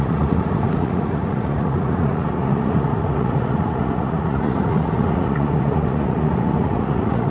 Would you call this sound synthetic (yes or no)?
yes